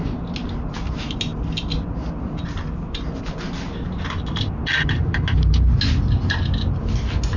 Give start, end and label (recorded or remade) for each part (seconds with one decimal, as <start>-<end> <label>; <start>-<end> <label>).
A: 0.0-7.4 recorded